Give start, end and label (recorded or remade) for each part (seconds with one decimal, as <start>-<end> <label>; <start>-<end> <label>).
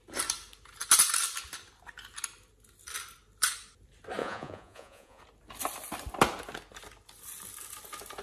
0.0-4.2 recorded; 4.2-5.2 remade; 5.2-8.2 recorded